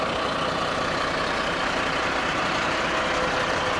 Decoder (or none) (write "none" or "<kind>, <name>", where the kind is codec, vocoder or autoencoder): none